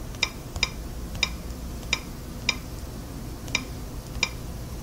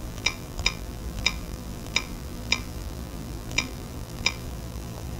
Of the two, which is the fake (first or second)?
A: second